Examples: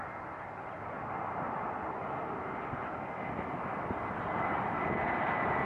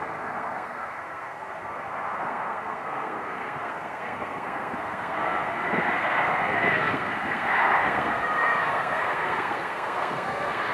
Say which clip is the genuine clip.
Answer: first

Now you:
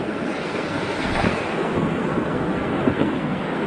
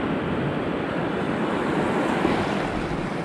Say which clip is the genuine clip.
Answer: second